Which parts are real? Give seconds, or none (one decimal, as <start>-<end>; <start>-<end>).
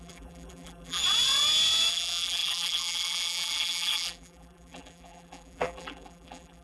1.0-1.9